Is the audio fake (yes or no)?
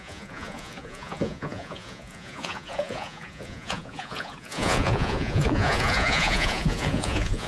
yes